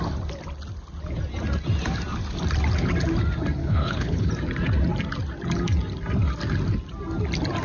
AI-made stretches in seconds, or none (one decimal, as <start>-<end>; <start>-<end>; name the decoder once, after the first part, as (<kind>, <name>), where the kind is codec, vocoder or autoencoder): 3.6-4.3 (codec, HILCodec)